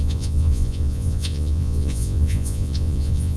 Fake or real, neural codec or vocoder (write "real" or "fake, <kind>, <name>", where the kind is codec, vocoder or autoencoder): fake, vocoder, Vocos